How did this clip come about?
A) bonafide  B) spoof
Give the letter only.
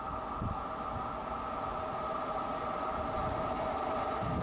A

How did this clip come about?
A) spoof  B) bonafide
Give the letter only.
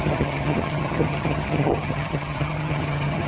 A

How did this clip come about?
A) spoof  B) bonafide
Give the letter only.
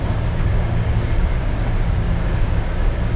A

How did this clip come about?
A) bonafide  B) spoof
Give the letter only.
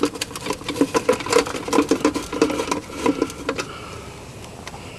A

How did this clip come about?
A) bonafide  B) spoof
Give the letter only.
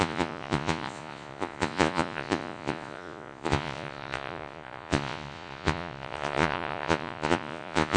B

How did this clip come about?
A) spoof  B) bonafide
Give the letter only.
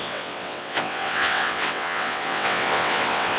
A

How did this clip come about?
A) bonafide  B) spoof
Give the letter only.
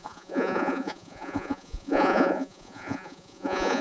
B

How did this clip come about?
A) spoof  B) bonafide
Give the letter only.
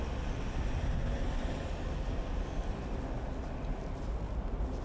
B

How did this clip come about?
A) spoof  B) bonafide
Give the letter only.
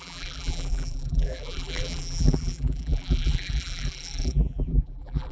A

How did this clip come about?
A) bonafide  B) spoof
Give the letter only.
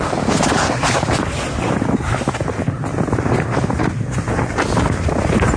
A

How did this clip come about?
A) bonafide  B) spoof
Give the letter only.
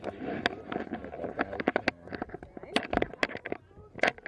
A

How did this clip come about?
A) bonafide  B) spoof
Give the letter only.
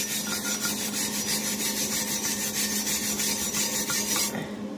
B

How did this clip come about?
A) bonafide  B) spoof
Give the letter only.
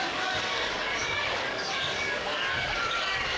B